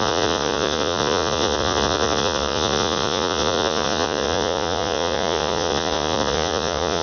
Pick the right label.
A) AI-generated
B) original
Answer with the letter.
A